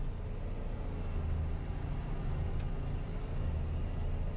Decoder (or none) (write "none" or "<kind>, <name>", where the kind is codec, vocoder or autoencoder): none